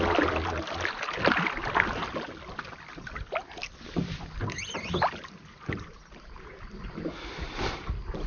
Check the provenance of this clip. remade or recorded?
recorded